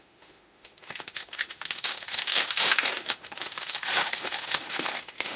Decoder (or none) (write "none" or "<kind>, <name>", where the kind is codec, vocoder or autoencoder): autoencoder, DAC-VAE